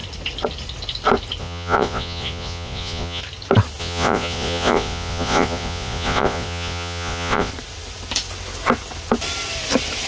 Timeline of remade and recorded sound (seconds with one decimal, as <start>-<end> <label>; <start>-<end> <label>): 0.0-1.4 recorded; 1.4-3.2 remade; 3.2-3.8 recorded; 3.8-7.5 remade; 7.5-10.1 recorded